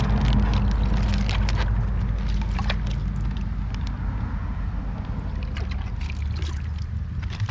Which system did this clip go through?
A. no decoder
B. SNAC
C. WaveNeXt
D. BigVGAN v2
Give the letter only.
A